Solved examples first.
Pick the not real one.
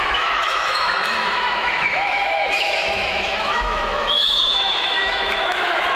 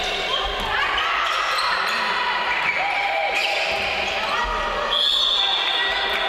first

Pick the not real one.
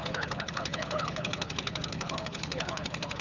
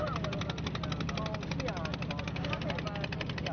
first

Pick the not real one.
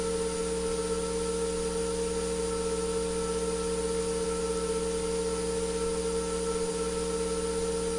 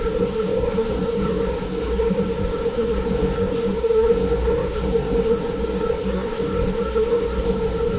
second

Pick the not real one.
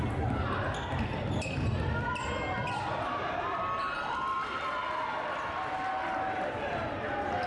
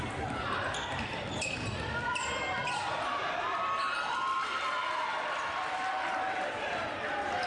second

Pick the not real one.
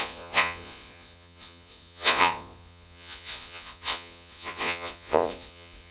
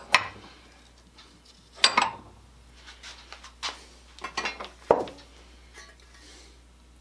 first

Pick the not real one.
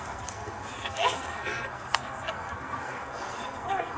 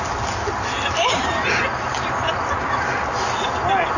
first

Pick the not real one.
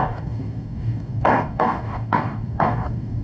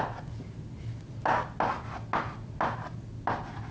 first